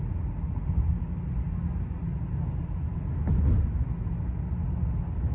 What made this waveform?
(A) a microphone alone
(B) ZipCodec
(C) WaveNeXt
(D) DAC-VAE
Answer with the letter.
A